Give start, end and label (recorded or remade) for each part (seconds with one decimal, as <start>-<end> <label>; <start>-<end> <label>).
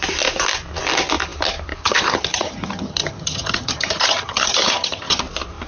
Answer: 0.0-1.8 recorded; 1.8-5.2 remade; 5.2-5.7 recorded